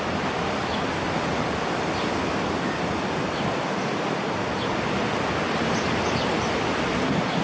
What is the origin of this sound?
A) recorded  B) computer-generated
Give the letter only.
A